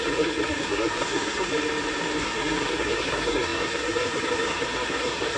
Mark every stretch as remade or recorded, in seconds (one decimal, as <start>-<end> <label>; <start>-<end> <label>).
0.0-1.5 remade; 1.5-2.2 recorded; 2.2-5.4 remade